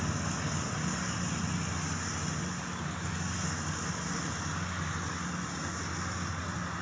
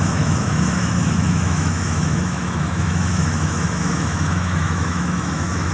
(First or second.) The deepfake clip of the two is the second